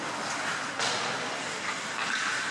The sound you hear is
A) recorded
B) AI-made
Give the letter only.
A